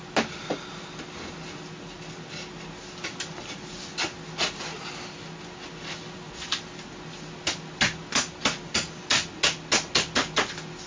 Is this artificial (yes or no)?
no